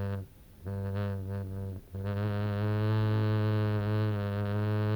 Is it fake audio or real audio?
real